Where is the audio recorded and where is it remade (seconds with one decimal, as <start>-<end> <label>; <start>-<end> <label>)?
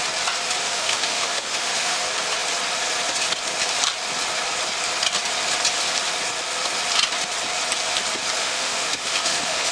0.0-0.6 recorded; 0.6-2.0 remade; 2.0-8.4 recorded; 8.4-9.7 remade